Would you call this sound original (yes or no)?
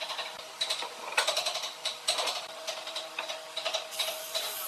no